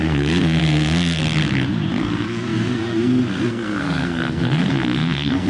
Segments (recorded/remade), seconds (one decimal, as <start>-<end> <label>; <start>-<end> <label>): 0.0-1.2 remade; 1.2-2.0 recorded; 2.0-5.5 remade